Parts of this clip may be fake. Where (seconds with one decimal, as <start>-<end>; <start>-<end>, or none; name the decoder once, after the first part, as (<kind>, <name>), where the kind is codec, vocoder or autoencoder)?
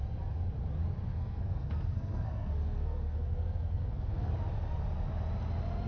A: 1.1-4.3 (codec, SNAC)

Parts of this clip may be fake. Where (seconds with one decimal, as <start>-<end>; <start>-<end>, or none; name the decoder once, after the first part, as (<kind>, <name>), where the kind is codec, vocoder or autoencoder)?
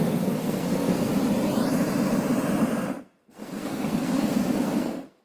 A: 0.0-1.1 (codec, SNAC); 2.6-5.2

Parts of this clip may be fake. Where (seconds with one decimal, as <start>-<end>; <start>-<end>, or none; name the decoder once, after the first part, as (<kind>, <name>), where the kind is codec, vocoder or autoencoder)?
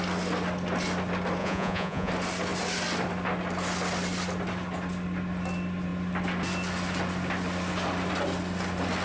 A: 1.4-2.1 (vocoder, Vocos)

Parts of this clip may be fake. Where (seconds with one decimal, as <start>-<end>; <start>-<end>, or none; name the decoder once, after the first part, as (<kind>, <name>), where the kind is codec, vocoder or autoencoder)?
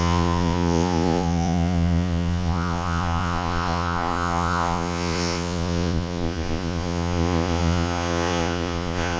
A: 0.0-9.2 (vocoder, Vocos)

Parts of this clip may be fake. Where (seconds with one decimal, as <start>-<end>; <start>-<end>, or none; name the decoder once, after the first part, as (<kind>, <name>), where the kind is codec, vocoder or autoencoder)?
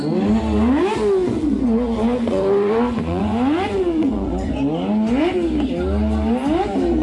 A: 1.2-4.5 (vocoder, Vocos)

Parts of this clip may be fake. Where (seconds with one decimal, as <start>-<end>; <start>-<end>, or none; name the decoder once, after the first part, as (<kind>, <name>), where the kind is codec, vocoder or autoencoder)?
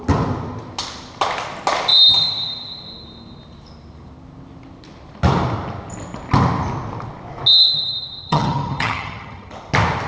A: 8.2-9.5 (vocoder, HiFi-GAN)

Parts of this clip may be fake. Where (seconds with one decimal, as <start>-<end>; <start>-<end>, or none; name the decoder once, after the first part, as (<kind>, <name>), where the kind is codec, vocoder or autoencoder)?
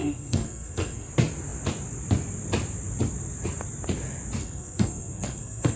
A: 0.0-1.1 (codec, SNAC); 4.4-5.8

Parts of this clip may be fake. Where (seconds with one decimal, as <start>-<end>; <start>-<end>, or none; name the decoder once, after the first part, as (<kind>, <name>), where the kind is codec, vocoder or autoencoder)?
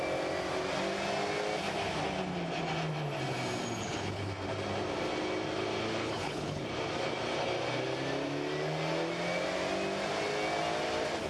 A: 3.8-4.3 (codec, HILCodec); 6.0-6.7